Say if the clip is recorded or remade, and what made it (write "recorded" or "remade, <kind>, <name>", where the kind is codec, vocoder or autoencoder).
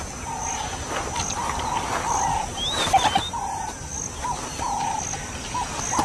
recorded